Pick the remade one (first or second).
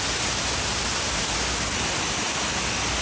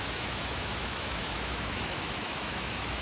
second